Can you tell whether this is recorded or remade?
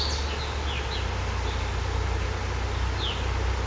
recorded